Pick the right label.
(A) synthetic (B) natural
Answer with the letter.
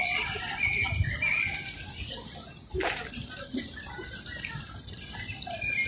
B